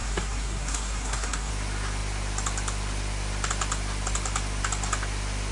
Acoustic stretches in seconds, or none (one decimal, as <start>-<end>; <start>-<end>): 1.5-5.5